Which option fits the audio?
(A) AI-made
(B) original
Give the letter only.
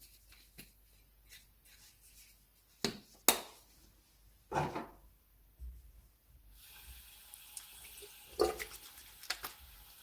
B